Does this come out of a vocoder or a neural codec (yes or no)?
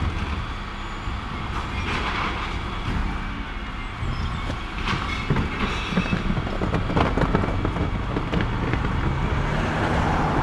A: no